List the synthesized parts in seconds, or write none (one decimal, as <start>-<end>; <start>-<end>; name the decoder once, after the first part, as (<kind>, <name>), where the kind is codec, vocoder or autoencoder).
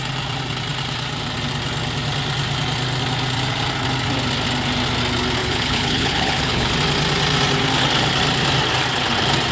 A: 5.4-6.7 (codec, HILCodec)